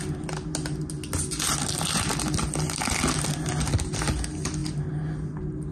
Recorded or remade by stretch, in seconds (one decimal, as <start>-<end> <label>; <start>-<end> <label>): 0.0-5.7 recorded